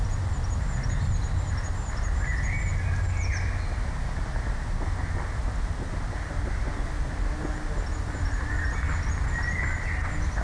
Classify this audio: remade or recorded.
recorded